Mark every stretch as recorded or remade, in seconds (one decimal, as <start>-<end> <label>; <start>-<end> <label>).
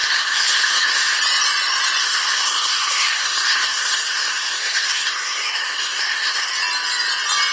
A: 0.0-1.2 remade; 1.2-2.0 recorded; 2.0-6.5 remade; 6.5-7.5 recorded